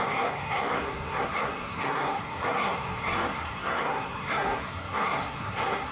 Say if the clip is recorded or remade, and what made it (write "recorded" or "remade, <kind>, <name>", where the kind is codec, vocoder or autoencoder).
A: remade, codec, SNAC